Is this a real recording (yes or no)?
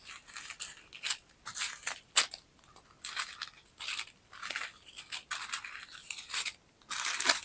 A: yes